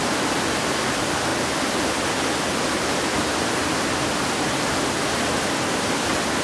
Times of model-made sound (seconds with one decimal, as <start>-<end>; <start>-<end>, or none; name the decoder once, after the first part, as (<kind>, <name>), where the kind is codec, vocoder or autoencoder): none

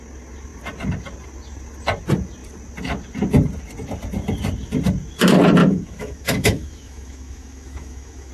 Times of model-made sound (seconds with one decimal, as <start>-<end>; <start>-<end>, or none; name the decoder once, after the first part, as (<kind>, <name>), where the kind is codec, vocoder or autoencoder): 5.6-8.3 (autoencoder, DAC-VAE)